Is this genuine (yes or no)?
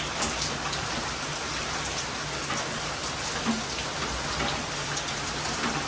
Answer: yes